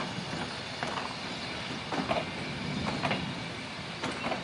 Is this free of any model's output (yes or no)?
yes